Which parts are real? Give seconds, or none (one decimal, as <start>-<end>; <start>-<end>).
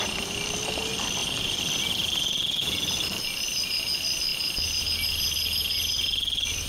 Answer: 0.0-6.7